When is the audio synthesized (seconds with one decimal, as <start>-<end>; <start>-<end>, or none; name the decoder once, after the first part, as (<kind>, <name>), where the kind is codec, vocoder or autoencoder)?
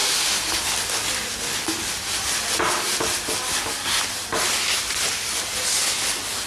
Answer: 0.0-4.3 (vocoder, BigVGAN v2); 4.8-6.5